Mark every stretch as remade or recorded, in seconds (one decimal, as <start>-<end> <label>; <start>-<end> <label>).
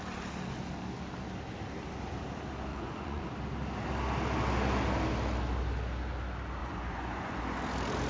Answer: 0.0-2.7 recorded; 2.7-3.2 remade; 3.2-6.6 recorded; 6.6-7.4 remade; 7.4-8.1 recorded